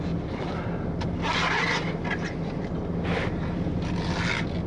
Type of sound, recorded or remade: recorded